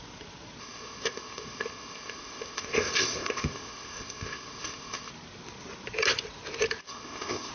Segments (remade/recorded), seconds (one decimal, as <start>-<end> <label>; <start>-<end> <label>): 0.0-0.6 recorded; 0.6-5.1 remade; 5.1-6.8 recorded; 6.8-7.5 remade